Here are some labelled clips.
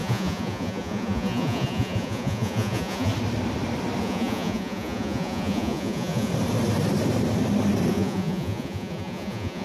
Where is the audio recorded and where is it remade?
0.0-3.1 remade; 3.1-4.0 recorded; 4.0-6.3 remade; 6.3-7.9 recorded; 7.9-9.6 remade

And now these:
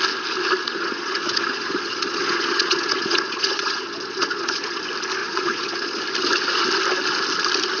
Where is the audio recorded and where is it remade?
0.0-0.6 recorded; 0.6-4.8 remade; 4.8-5.2 recorded; 5.2-6.0 remade; 6.0-7.8 recorded

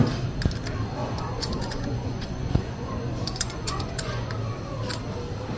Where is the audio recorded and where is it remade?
0.0-1.0 recorded; 1.0-4.3 remade; 4.3-5.6 recorded